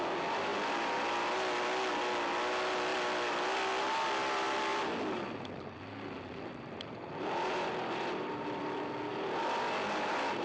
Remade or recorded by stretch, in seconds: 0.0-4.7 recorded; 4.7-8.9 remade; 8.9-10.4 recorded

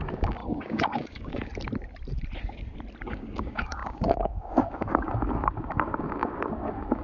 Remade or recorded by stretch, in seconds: 0.0-1.5 remade; 1.5-3.1 recorded; 3.1-7.0 remade

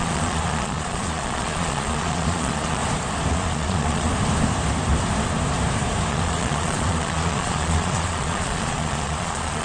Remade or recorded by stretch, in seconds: 0.0-2.8 remade; 2.8-3.3 recorded; 3.3-4.1 remade; 4.1-6.1 recorded; 6.1-9.6 remade